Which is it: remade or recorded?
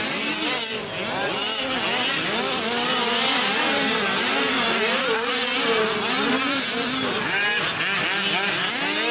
recorded